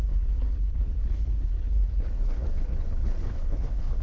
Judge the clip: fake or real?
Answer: fake